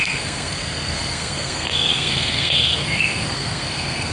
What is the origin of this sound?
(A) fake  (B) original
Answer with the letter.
A